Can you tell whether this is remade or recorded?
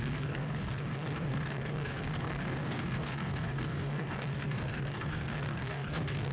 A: remade